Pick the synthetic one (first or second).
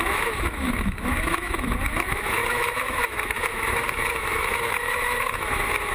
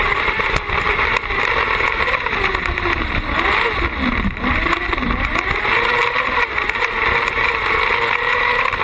first